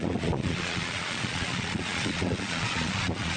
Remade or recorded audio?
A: remade